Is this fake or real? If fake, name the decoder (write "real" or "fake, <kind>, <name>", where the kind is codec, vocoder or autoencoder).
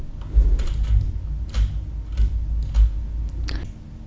real